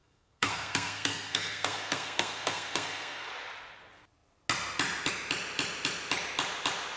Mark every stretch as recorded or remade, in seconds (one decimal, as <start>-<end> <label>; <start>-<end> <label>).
0.0-3.3 remade; 3.3-7.0 recorded